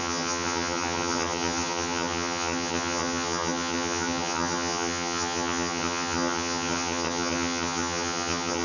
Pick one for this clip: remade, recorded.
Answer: remade